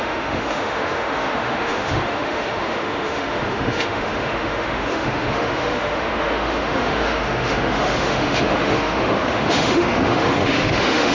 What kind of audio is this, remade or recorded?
remade